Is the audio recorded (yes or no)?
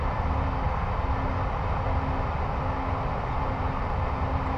yes